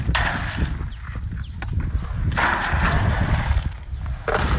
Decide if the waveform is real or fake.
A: real